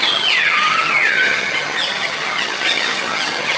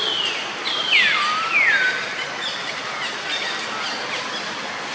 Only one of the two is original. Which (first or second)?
second